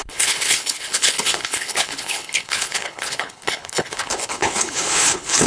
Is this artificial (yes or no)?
yes